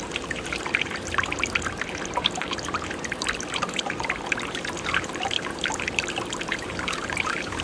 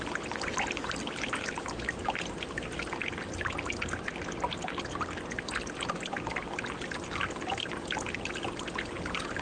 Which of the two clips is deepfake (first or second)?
first